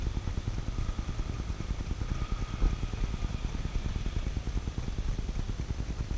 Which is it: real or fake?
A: real